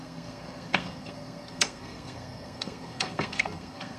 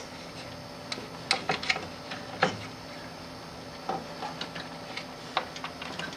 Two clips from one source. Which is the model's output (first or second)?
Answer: first